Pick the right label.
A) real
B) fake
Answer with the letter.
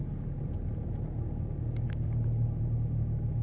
A